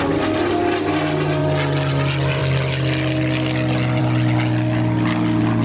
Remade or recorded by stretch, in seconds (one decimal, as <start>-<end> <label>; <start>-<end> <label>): 0.0-5.6 recorded